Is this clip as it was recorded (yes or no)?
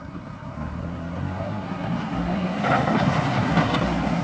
no